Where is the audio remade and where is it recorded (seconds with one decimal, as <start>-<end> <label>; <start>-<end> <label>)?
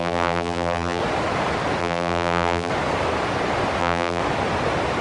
0.0-1.0 remade; 1.0-1.8 recorded; 1.8-2.7 remade; 2.7-3.8 recorded; 3.8-4.2 remade; 4.2-5.0 recorded